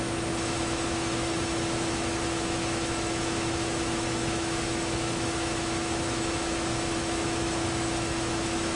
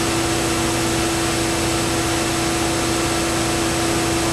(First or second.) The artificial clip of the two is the first